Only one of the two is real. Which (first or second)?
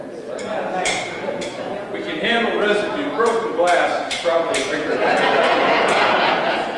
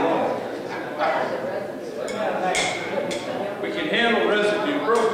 second